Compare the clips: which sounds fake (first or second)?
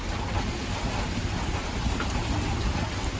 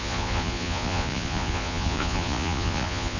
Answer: second